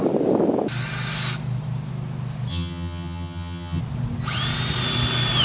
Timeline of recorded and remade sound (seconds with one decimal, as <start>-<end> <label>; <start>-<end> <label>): 0.0-2.5 recorded; 2.5-3.8 remade; 3.8-5.4 recorded